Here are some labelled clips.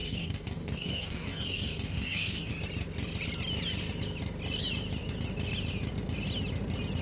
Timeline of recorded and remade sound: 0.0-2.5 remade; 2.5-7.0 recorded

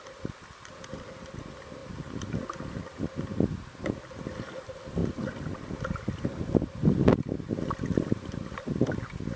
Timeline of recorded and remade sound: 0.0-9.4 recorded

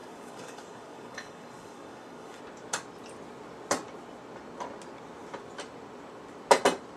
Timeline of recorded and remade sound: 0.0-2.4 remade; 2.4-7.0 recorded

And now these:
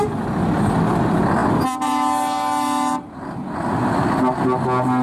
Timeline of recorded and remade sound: 0.0-5.0 recorded

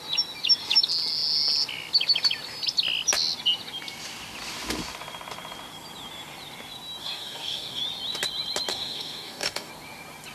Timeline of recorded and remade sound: 0.0-7.0 recorded; 7.0-7.8 remade; 7.8-8.7 recorded; 8.7-9.7 remade; 9.7-10.3 recorded